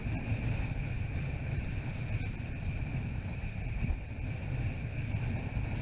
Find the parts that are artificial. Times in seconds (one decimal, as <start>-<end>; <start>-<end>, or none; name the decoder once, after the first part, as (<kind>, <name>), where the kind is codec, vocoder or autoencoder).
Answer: none

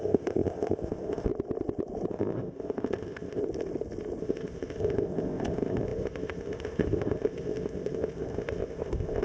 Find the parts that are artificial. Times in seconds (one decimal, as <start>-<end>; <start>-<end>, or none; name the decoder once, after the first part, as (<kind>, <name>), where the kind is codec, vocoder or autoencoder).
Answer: 0.0-1.3 (codec, ZipCodec); 2.1-3.4; 4.2-9.2

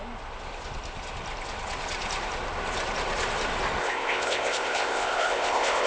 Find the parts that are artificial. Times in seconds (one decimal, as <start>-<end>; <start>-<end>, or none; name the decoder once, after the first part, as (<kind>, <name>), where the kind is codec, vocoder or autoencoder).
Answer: 3.8-5.9 (codec, ZipCodec)

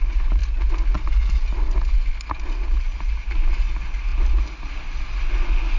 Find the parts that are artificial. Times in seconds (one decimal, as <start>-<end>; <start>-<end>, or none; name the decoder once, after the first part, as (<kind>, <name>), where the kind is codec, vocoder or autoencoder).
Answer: none

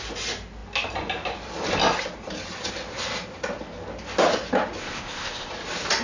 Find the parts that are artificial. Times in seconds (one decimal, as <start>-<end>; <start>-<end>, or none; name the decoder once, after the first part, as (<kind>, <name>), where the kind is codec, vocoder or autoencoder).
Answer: 4.8-5.5 (codec, ZipCodec)

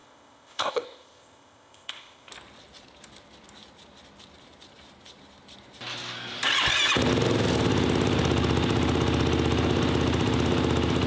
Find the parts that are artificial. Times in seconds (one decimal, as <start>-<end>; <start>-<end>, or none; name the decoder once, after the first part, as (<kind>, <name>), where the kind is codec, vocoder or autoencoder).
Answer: 0.0-2.3 (codec, ZipCodec)

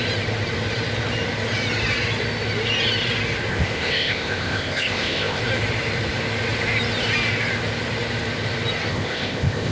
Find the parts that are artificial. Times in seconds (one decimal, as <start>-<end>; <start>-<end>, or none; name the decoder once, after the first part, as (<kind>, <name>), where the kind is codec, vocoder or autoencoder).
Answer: 3.5-5.4 (codec, ZipCodec); 8.9-9.7

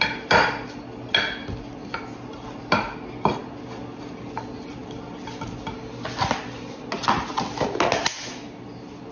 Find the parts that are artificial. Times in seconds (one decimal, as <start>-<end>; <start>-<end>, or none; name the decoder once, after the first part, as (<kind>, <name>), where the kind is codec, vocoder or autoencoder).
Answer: none